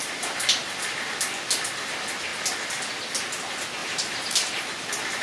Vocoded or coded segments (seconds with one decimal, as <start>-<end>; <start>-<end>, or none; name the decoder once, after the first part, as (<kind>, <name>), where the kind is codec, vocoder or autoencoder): 3.8-4.6 (vocoder, BigVGAN v2)